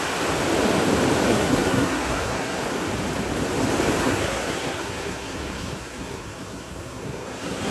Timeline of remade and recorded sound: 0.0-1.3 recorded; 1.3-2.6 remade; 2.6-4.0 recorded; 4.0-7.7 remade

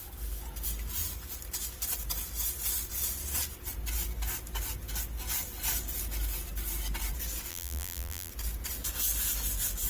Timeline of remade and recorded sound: 0.0-7.5 recorded; 7.5-8.3 remade; 8.3-9.9 recorded

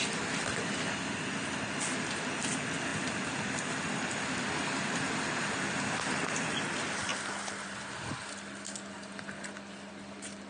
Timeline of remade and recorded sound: 0.0-10.5 recorded

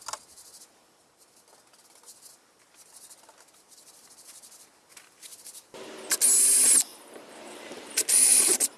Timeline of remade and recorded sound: 0.0-6.9 recorded; 6.9-8.8 remade

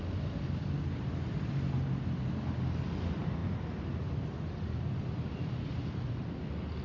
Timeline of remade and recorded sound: 0.0-6.8 recorded